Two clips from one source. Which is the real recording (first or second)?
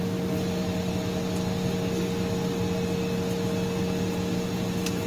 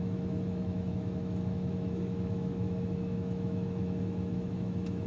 first